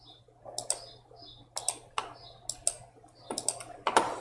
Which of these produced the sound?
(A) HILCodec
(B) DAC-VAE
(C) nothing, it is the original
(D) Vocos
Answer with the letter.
C